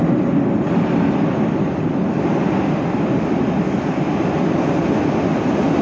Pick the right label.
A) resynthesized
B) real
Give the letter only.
B